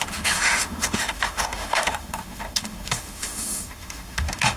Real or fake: fake